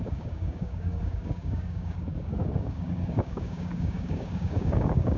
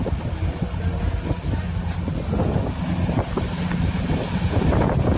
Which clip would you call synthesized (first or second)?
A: first